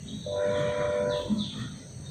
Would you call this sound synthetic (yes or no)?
no